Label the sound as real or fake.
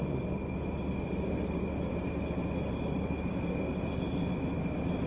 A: real